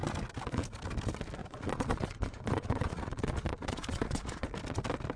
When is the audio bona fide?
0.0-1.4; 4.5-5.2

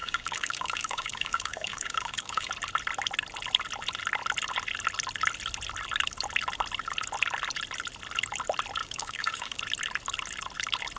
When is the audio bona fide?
2.5-8.8; 9.6-11.0